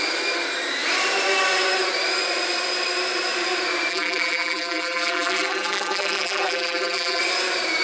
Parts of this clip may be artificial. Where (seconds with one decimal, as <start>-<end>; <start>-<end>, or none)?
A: 3.9-7.2